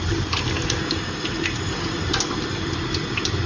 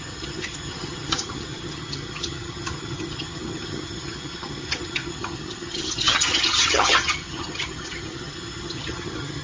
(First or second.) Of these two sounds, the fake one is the second